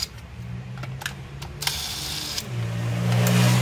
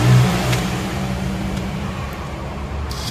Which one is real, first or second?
first